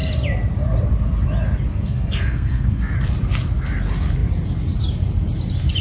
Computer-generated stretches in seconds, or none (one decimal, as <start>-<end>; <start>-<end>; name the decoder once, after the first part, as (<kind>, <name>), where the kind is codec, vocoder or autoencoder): 1.7-2.8 (codec, SNAC)